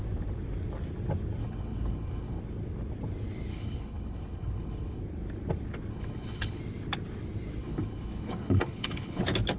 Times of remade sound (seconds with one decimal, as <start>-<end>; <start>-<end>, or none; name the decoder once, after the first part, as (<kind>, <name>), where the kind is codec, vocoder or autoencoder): 1.4-2.4 (codec, HILCodec); 3.5-5.0; 5.9-6.6; 7.6-9.2